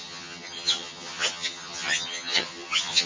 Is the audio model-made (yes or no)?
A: yes